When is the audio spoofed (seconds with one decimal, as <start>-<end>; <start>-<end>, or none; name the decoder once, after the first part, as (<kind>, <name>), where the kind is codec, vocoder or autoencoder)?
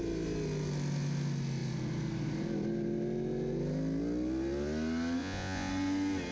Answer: 5.2-5.7 (vocoder, Vocos)